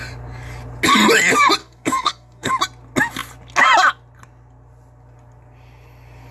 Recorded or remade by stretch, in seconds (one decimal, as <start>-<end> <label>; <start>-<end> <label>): 0.0-1.6 recorded; 1.6-2.5 remade; 2.5-6.3 recorded